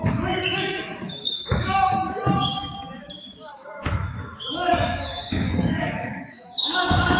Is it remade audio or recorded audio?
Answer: remade